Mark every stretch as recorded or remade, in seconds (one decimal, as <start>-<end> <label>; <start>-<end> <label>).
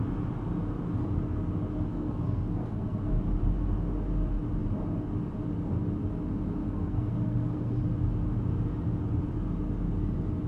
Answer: 0.0-1.9 recorded; 1.9-3.1 remade; 3.1-6.6 recorded; 6.6-7.8 remade; 7.8-10.5 recorded